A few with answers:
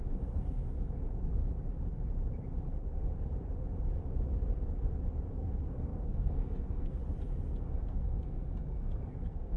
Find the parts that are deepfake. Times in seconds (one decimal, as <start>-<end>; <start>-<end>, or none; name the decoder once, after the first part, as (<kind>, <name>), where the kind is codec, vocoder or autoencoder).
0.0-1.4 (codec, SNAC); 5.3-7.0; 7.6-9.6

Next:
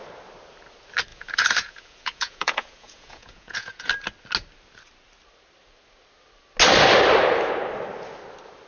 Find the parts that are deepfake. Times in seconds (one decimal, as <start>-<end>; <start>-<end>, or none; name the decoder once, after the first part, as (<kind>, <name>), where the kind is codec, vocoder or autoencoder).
1.1-3.9 (vocoder, Vocos)

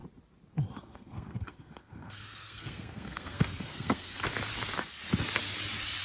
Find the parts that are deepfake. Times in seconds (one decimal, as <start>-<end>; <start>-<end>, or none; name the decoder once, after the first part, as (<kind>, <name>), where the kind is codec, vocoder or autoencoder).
0.8-4.3 (codec, SNAC)